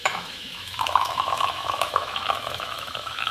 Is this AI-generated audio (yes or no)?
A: yes